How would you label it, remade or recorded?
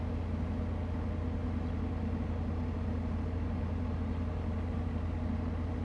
recorded